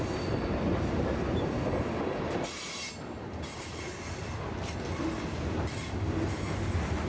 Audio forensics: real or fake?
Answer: real